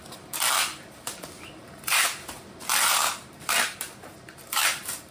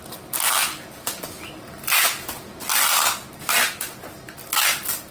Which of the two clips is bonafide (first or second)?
second